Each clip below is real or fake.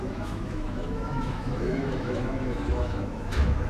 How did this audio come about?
fake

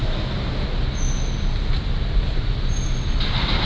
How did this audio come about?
real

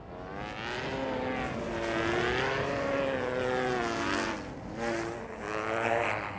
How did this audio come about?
real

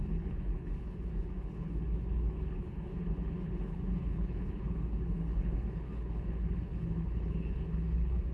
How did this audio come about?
fake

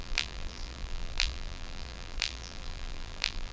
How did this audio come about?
fake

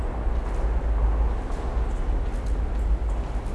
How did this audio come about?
real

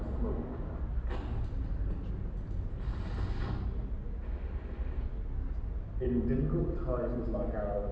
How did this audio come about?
real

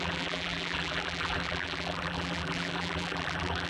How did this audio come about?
fake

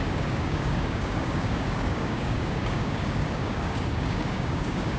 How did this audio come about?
fake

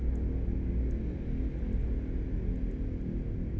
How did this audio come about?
real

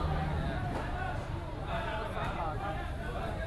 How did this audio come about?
real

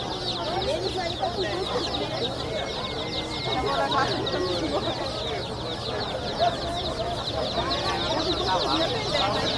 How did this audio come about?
real